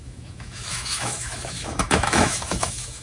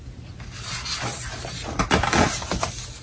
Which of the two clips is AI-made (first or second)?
first